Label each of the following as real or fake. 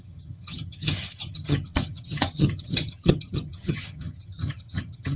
fake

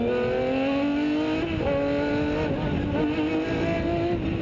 real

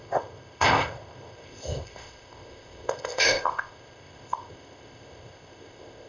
fake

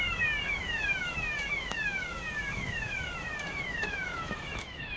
fake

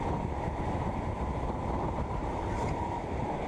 fake